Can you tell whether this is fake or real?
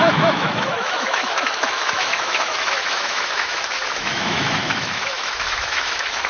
fake